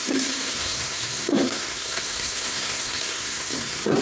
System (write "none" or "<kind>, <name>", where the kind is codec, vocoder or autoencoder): codec, SNAC